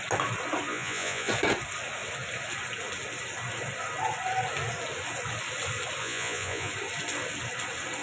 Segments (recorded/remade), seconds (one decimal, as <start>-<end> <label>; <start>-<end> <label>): 0.0-0.7 recorded; 0.7-1.3 remade; 1.3-6.0 recorded; 6.0-6.7 remade; 6.7-8.0 recorded